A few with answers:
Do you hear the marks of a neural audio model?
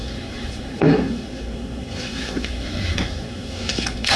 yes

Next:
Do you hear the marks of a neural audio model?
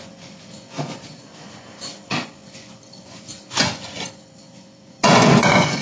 yes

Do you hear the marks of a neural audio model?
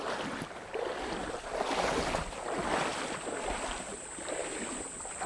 no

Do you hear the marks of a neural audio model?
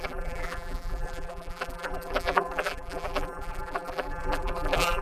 yes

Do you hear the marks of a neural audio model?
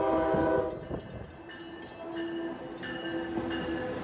no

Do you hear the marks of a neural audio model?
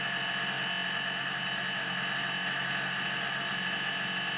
no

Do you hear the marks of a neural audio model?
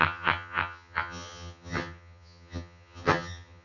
yes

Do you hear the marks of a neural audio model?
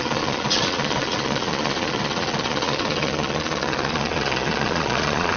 yes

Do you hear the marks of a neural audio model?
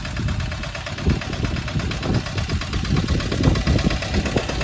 no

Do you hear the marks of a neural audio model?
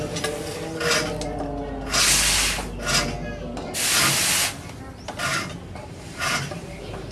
no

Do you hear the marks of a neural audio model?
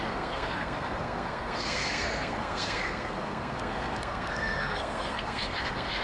yes